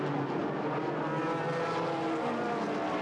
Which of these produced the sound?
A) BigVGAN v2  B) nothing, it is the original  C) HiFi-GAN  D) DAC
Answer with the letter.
B